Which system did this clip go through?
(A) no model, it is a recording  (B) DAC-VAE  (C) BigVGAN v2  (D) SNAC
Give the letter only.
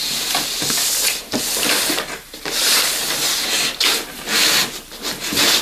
A